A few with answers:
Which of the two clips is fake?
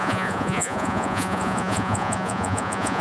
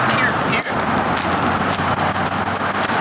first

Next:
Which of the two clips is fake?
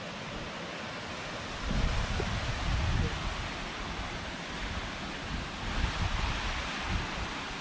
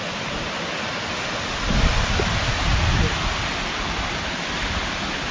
second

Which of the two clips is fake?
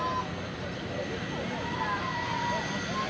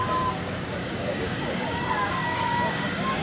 second